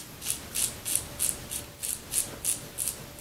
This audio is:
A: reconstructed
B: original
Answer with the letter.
B